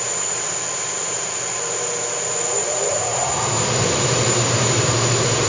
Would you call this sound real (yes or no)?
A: no